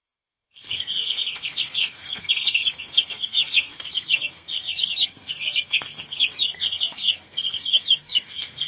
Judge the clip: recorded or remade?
remade